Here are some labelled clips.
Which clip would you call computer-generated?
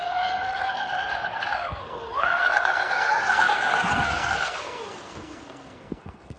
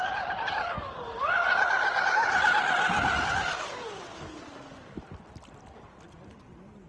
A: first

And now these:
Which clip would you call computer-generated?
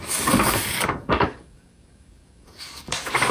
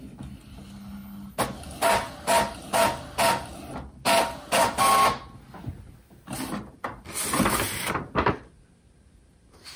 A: first